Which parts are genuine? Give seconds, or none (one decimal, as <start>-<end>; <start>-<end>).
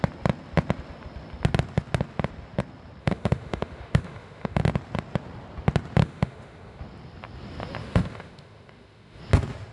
0.0-3.0; 4.6-6.0; 6.8-7.8; 9.2-9.7